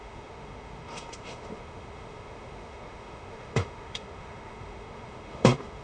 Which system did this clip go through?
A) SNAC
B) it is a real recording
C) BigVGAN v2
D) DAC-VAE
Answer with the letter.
D